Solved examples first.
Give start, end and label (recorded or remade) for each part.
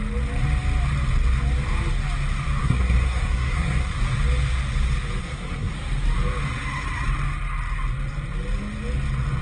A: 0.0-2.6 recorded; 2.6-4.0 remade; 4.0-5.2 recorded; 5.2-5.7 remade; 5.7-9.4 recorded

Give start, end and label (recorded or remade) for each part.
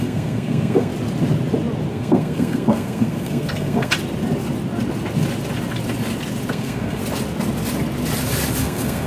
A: 0.0-0.9 remade; 0.9-1.9 recorded; 1.9-3.9 remade; 3.9-6.5 recorded; 6.5-7.0 remade; 7.0-8.6 recorded; 8.6-9.1 remade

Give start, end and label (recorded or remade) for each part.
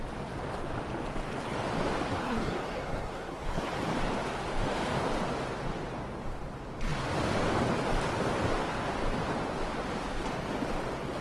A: 0.0-2.2 recorded; 2.2-3.7 remade; 3.7-11.2 recorded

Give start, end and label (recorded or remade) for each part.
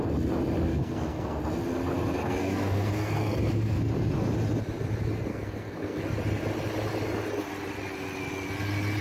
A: 0.0-0.7 recorded; 0.7-1.4 remade; 1.4-2.2 recorded; 2.2-3.9 remade; 3.9-5.3 recorded; 5.3-6.0 remade; 6.0-9.0 recorded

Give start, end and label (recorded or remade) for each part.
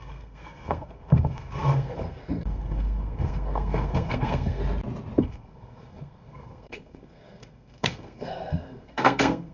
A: 0.0-4.6 remade; 4.6-5.2 recorded; 5.2-9.5 remade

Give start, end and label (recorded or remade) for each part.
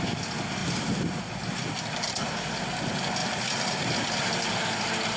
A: 0.0-5.2 recorded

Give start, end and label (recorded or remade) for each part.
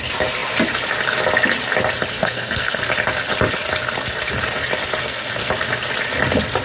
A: 0.0-2.1 recorded; 2.1-2.8 remade; 2.8-5.0 recorded; 5.0-5.5 remade; 5.5-6.6 recorded